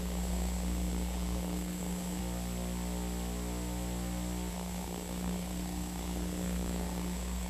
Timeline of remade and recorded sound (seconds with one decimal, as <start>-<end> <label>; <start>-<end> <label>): 0.0-2.2 remade; 2.2-4.5 recorded; 4.5-7.5 remade